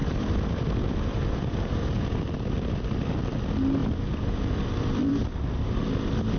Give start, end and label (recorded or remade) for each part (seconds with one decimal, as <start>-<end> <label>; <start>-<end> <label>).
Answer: 0.0-3.2 remade; 3.2-3.8 recorded; 3.8-5.1 remade; 5.1-6.4 recorded